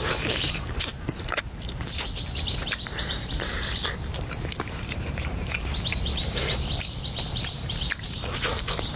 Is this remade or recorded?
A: remade